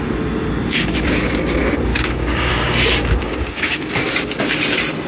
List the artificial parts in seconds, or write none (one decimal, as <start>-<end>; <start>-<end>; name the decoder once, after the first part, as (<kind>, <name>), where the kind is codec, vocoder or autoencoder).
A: 1.9-3.9 (codec, DAC)